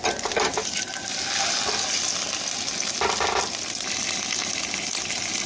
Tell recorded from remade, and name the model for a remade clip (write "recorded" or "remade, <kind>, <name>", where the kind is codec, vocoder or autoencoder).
recorded